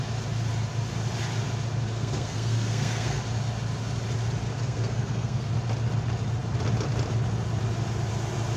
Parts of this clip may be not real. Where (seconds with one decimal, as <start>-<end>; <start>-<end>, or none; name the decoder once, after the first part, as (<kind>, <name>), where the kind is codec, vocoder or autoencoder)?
1.9-3.2 (codec, SNAC); 4.6-5.5